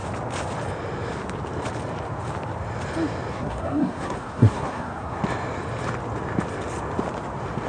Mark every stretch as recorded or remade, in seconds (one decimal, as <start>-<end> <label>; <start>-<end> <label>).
0.0-3.3 recorded; 3.3-5.2 remade; 5.2-7.7 recorded